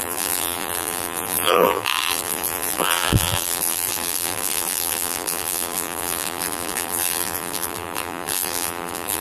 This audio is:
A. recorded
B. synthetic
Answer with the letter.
B